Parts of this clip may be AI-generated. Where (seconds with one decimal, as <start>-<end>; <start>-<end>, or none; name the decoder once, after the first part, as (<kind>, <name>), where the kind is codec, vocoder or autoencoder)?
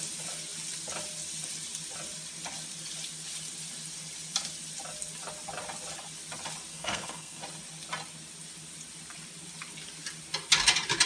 6.7-7.4 (codec, SNAC)